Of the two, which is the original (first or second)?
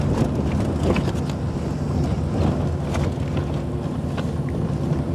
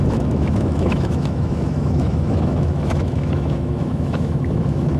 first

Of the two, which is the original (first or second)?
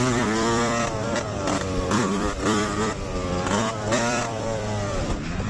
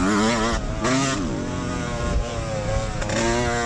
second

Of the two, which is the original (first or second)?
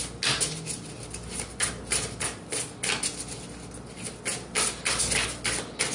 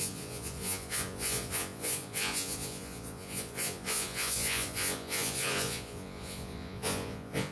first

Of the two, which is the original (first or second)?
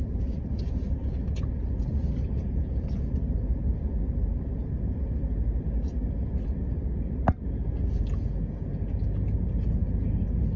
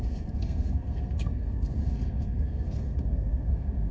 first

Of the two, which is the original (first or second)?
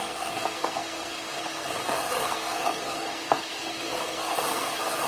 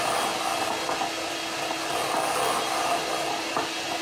second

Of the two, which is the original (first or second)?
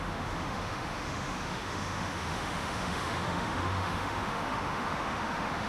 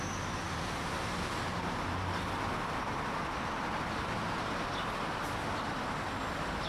second